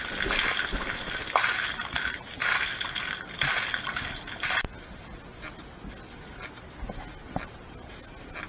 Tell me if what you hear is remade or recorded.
recorded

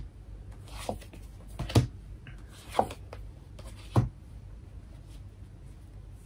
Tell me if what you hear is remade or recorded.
recorded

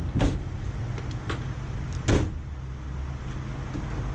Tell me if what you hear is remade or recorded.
recorded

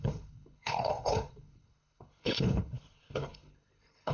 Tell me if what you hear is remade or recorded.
remade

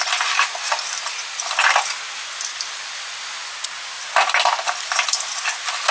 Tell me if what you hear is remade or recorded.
recorded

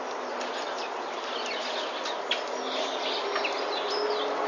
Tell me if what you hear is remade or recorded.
recorded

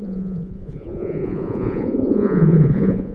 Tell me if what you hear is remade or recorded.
remade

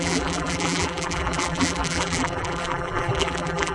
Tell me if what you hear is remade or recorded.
remade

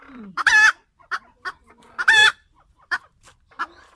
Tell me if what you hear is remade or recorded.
remade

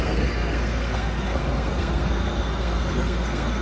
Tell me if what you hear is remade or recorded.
remade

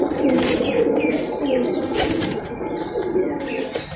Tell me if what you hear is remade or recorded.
remade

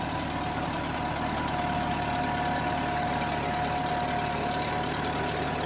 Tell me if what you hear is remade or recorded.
recorded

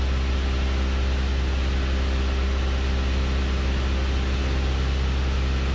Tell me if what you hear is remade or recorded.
recorded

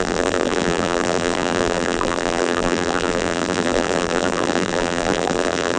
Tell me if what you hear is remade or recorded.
remade